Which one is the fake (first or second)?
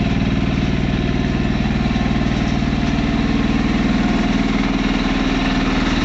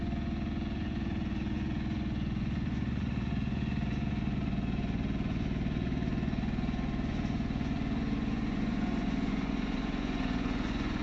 second